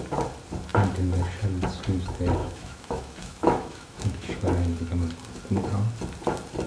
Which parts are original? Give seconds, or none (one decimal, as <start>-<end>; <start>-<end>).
0.0-2.4; 4.4-6.7